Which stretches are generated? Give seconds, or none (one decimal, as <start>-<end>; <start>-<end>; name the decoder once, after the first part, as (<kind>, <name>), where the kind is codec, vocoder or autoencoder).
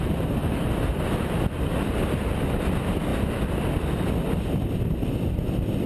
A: 0.4-2.3 (vocoder, BigVGAN v2)